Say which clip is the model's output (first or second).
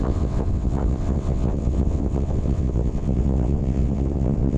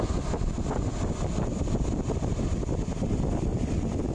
first